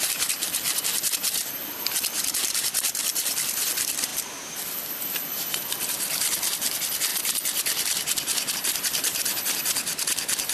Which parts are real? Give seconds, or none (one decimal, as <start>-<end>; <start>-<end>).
4.1-4.6; 7.1-8.5